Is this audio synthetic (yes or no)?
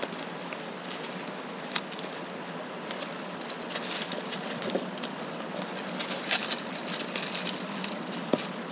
no